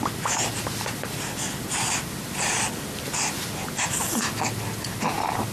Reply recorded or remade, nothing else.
recorded